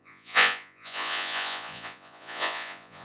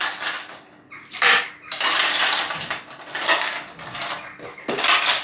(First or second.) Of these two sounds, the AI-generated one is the first